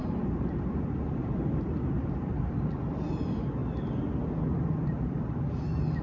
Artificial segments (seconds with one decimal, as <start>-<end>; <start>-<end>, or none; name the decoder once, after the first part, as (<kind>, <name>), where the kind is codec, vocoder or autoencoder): 0.0-2.7 (vocoder, BigVGAN v2)